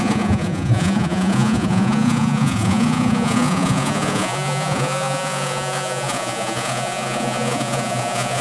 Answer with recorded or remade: remade